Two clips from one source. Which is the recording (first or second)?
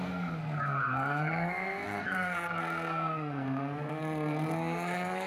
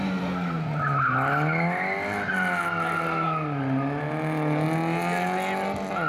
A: second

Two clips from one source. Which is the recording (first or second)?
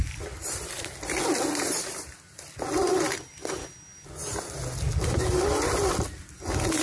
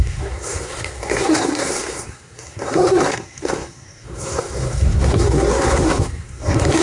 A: first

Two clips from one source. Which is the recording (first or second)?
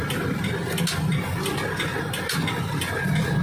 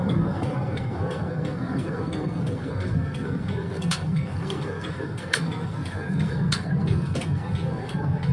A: first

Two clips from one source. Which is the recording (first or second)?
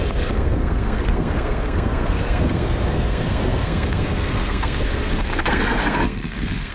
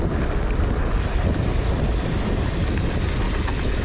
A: second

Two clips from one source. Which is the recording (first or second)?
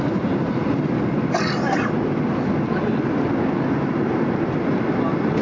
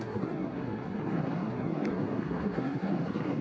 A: first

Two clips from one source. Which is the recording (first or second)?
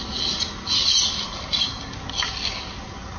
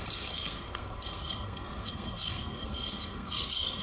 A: first